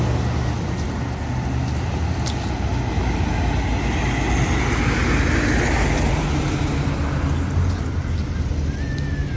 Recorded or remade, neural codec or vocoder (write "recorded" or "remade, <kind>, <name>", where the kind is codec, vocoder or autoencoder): recorded